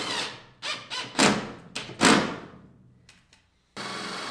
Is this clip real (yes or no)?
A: yes